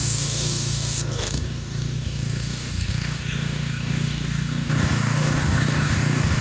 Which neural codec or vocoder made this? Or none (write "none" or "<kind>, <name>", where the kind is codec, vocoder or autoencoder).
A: codec, DAC